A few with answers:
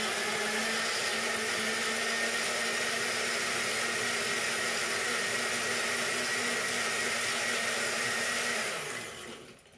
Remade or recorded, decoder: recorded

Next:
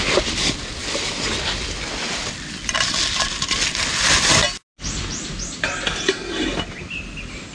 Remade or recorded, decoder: recorded